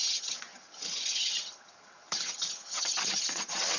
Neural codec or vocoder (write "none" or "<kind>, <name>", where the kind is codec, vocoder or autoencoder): vocoder, HiFi-GAN